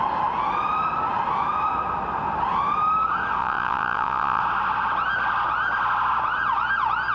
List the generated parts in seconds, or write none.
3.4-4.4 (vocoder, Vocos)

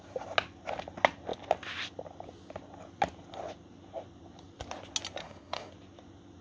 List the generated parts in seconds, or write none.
5.2-5.7 (autoencoder, DAC-VAE)